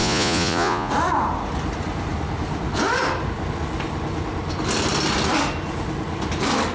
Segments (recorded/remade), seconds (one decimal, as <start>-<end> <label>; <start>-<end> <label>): 0.0-0.9 remade; 0.9-6.7 recorded